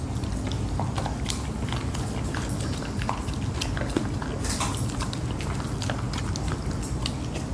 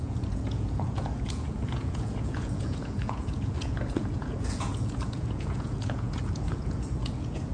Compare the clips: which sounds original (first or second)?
first